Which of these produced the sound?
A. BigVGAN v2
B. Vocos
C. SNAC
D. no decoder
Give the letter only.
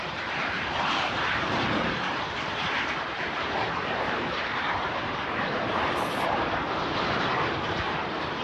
A